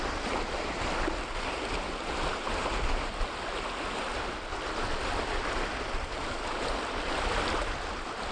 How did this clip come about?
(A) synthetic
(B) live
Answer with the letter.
B